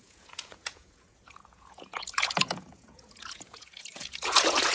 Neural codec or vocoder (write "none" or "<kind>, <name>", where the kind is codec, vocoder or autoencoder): vocoder, Vocos